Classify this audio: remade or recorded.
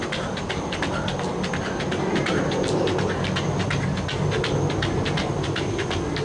recorded